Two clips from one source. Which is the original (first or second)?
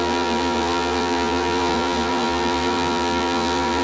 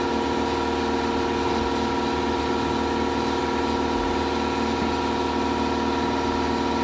second